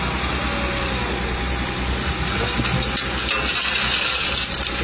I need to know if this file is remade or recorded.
recorded